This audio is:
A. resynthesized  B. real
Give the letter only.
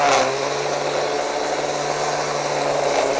B